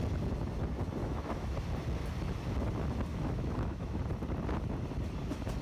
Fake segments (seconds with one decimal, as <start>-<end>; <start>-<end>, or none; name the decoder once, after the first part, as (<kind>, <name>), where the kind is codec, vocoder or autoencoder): 1.0-1.5 (autoencoder, DAC-VAE); 3.1-4.0